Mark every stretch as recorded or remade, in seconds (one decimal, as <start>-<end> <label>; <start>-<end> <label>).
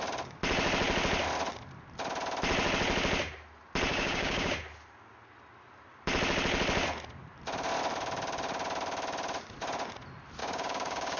0.0-3.9 recorded; 3.9-4.5 remade; 4.5-10.4 recorded; 10.4-11.2 remade